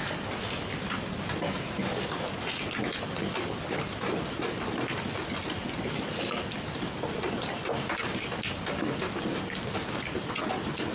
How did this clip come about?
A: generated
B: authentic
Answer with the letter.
B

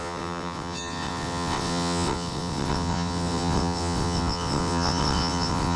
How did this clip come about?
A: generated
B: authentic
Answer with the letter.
A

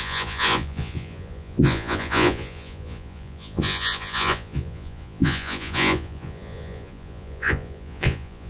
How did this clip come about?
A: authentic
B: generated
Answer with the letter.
B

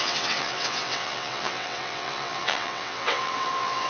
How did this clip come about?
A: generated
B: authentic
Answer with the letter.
A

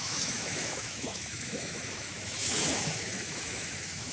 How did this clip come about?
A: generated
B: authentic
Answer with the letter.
A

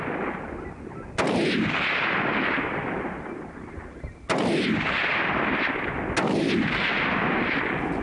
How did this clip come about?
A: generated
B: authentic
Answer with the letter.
B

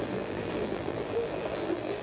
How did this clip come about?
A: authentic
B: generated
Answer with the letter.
B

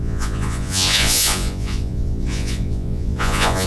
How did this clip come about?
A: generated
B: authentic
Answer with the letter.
A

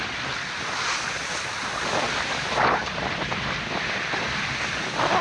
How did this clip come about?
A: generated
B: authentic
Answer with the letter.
A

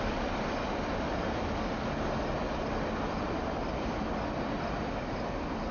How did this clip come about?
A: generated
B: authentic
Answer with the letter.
B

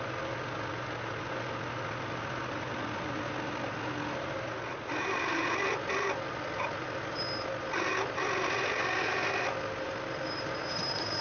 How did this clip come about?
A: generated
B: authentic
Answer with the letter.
B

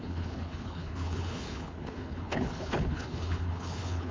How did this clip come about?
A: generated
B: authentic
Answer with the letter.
A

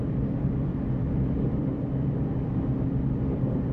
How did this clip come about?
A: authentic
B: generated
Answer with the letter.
B